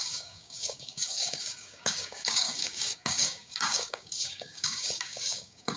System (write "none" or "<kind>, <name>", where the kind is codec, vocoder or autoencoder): codec, DAC